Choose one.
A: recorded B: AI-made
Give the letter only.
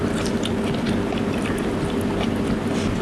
A